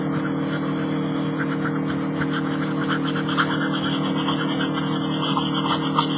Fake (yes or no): no